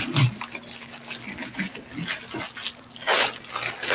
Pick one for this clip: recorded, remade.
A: recorded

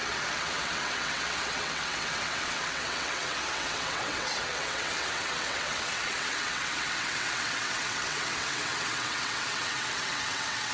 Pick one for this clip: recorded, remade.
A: remade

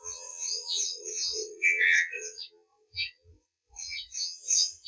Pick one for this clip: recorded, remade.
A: remade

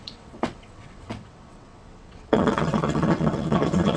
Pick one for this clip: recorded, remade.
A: remade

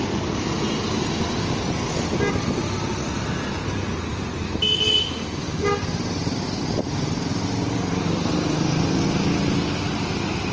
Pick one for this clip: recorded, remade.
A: recorded